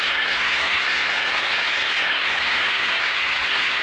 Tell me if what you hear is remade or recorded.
remade